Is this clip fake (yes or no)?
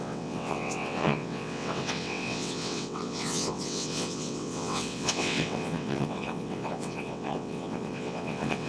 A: yes